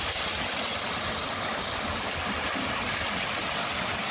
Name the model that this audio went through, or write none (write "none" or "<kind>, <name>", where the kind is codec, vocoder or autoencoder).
none